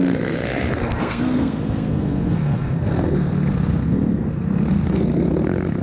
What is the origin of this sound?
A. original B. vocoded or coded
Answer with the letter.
B